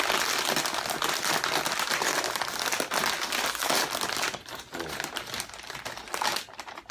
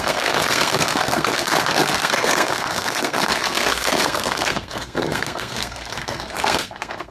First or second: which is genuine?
first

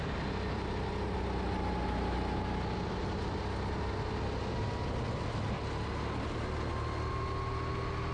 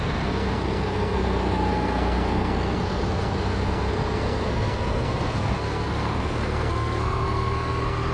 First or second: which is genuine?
first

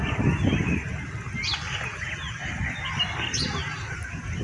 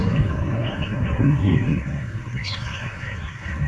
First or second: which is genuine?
first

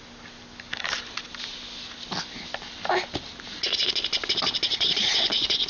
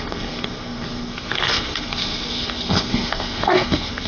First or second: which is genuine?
first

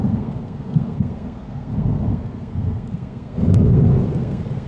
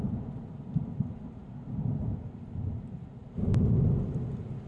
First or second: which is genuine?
second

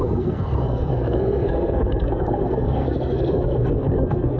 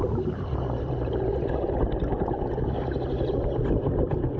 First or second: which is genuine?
second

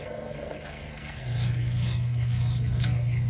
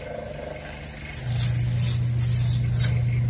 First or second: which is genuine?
second